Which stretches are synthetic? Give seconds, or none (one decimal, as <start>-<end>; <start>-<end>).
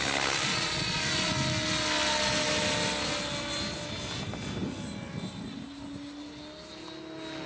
0.5-1.0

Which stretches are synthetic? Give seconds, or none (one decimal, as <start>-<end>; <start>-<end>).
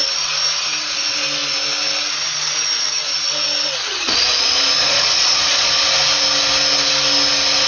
3.9-5.8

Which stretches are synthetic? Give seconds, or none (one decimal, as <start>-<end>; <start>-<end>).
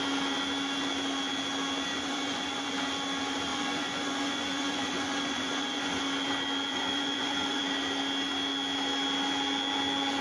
1.9-2.7; 3.5-6.0; 6.7-7.6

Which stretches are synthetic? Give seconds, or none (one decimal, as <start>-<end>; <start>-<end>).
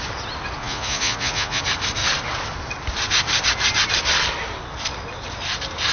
0.6-1.6